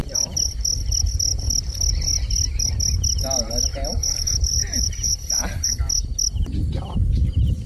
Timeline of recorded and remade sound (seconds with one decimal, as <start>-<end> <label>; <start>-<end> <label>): 0.0-3.7 recorded; 3.7-5.8 remade; 5.8-7.7 recorded